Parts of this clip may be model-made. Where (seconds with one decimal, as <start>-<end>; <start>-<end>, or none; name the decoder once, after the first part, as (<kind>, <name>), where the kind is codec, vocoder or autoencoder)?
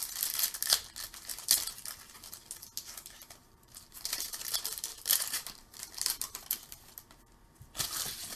3.4-4.5 (vocoder, BigVGAN v2); 4.9-6.9